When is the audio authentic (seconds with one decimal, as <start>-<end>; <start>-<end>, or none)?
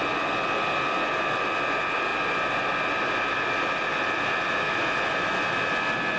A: 0.0-6.2